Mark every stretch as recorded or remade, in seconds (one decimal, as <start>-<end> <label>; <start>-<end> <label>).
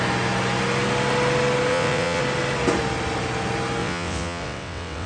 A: 0.0-1.7 recorded; 1.7-2.2 remade; 2.2-3.8 recorded; 3.8-5.1 remade